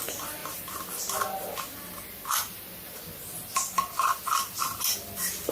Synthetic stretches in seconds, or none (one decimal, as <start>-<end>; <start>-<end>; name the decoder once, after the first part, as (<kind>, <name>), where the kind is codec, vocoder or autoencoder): none